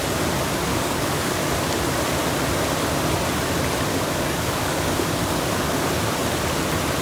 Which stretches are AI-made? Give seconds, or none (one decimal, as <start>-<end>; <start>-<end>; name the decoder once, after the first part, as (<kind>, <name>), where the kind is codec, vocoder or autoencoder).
0.7-1.5 (codec, DAC); 3.9-5.8